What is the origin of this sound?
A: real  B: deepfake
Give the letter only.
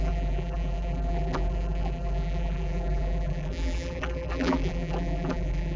B